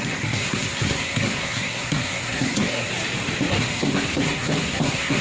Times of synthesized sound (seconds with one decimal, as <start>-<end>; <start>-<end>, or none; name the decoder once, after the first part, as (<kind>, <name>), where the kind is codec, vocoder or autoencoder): 0.0-2.9 (codec, SNAC); 3.6-5.2